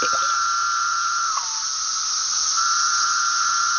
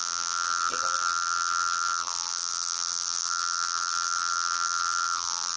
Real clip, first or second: first